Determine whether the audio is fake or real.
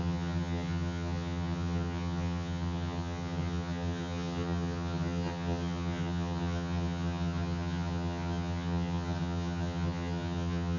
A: fake